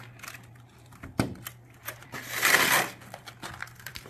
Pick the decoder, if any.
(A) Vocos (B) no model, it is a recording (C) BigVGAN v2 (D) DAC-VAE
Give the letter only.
C